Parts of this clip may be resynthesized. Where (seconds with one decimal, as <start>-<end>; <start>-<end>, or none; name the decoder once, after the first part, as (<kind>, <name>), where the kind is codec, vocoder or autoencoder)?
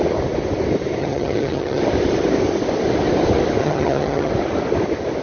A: 1.0-1.8 (vocoder, HiFi-GAN); 3.6-4.3